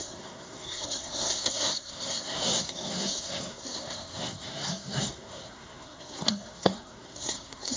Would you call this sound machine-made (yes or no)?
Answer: yes